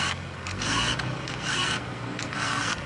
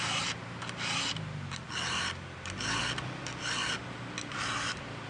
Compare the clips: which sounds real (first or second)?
second